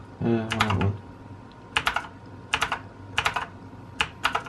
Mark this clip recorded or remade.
recorded